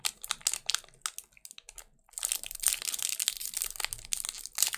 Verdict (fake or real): real